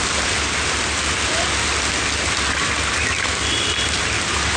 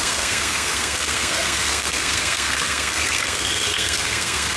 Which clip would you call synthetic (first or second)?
second